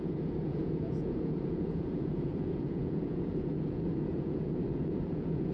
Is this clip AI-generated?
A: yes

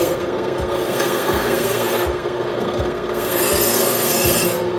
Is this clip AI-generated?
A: yes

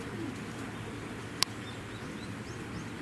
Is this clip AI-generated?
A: no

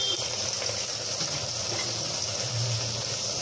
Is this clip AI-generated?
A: no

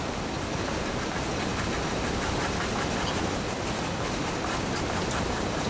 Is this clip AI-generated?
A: no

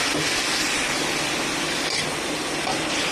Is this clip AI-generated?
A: no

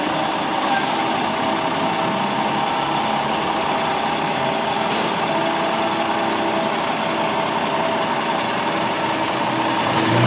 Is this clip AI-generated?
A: no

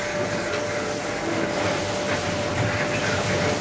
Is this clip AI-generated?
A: no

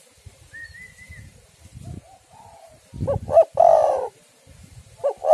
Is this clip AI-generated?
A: no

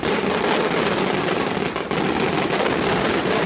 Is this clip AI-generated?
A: no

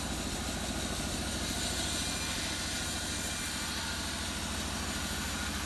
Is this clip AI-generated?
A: no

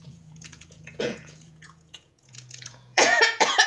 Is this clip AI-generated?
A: yes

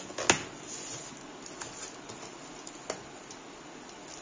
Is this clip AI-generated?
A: no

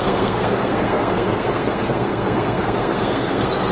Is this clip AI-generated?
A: yes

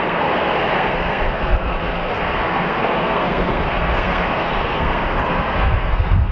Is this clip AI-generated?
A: yes